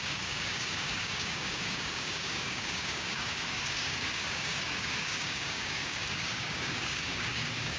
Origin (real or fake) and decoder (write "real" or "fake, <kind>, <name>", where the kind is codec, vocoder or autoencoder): fake, codec, DAC